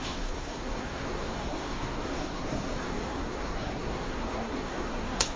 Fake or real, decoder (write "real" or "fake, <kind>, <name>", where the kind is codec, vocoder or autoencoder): fake, codec, SNAC